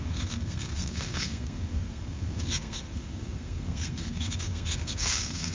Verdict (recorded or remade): remade